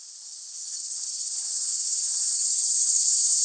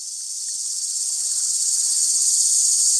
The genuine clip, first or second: second